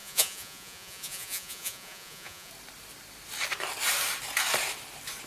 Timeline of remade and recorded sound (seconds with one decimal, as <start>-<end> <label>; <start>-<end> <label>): 0.0-2.5 remade; 2.5-5.3 recorded